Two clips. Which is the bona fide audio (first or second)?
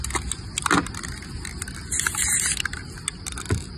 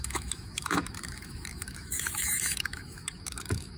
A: first